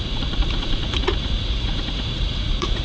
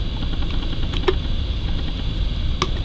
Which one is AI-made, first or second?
first